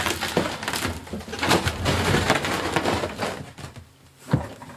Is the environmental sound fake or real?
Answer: real